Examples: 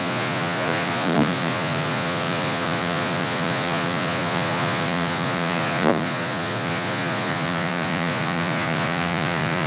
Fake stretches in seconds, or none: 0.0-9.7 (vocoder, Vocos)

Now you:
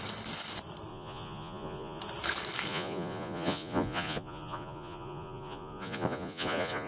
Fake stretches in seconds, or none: 0.9-2.0 (vocoder, Vocos); 2.7-6.9

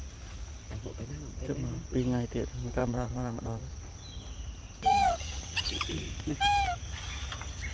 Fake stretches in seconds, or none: 2.8-3.7 (vocoder, Vocos); 4.9-5.8

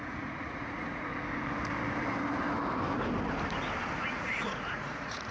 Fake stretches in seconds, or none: 0.0-1.1 (vocoder, Vocos); 4.0-5.3